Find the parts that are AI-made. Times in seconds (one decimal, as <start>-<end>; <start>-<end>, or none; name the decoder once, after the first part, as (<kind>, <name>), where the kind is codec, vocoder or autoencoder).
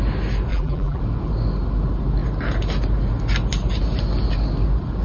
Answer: 0.5-1.0 (vocoder, BigVGAN v2)